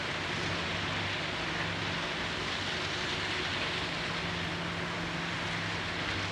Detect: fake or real real